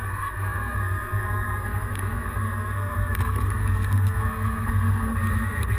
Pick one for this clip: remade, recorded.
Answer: remade